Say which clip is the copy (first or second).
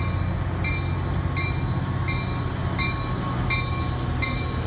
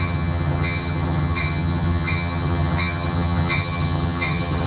second